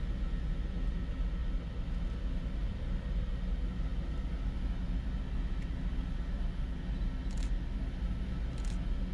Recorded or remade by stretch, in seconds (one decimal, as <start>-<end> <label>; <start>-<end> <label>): 0.0-2.6 recorded; 2.6-3.3 remade; 3.3-9.1 recorded